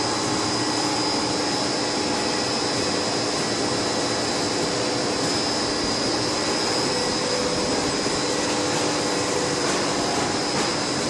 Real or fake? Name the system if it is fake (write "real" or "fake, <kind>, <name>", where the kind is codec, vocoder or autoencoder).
real